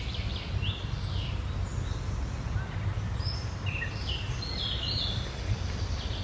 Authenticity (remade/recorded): recorded